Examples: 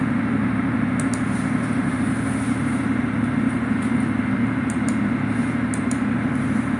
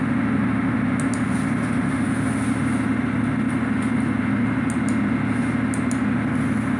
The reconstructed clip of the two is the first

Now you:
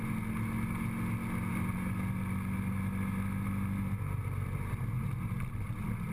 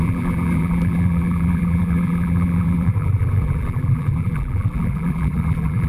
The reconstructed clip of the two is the second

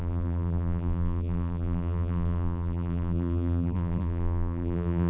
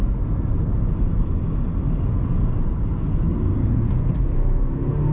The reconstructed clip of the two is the first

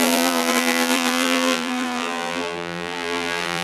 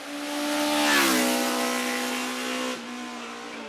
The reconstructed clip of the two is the first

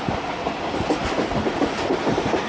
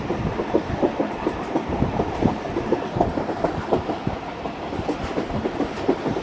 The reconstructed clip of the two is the second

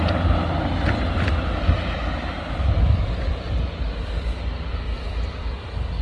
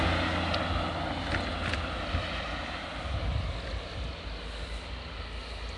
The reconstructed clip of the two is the first